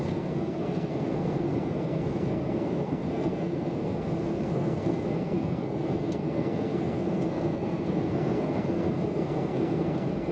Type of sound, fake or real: fake